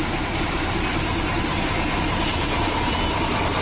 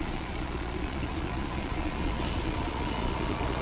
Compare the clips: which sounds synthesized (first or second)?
second